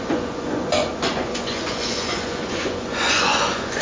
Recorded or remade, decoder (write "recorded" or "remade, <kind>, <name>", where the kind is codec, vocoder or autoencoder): remade, vocoder, Vocos